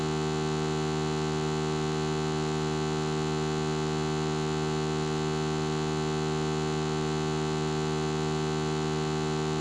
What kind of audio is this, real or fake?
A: real